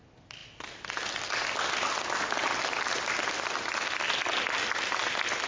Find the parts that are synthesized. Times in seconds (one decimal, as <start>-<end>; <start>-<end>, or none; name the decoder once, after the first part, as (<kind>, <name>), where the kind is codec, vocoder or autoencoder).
none